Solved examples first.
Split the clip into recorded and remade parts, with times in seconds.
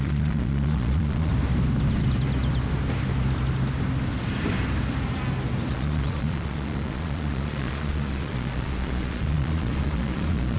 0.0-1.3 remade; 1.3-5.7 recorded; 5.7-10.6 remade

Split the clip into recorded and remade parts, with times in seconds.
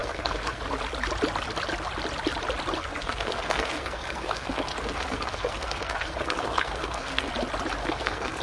0.0-0.6 remade; 0.6-2.8 recorded; 2.8-7.3 remade; 7.3-7.8 recorded; 7.8-8.4 remade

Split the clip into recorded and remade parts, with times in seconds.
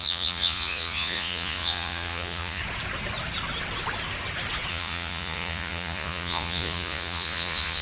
0.0-2.6 remade; 2.6-4.7 recorded; 4.7-7.8 remade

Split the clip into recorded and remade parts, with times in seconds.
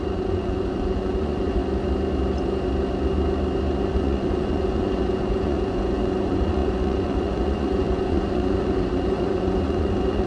0.0-1.6 remade; 1.6-3.8 recorded; 3.8-10.3 remade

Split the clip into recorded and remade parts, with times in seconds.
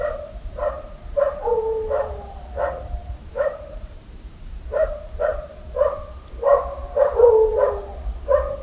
0.0-3.0 recorded; 3.0-5.2 remade; 5.2-6.8 recorded; 6.8-8.6 remade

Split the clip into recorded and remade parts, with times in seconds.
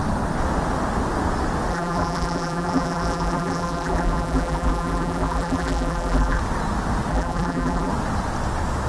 0.0-1.7 recorded; 1.7-6.4 remade; 6.4-7.1 recorded; 7.1-7.9 remade; 7.9-8.9 recorded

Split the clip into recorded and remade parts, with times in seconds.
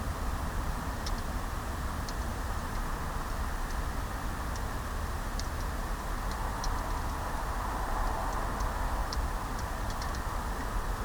0.0-2.3 recorded; 2.3-3.0 remade; 3.0-9.0 recorded; 9.0-9.8 remade; 9.8-11.0 recorded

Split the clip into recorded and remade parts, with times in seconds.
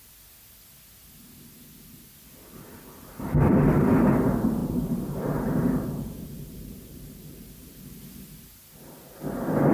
0.0-4.6 recorded; 4.6-8.0 remade; 8.0-9.7 recorded